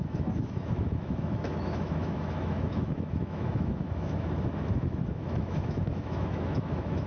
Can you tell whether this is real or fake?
fake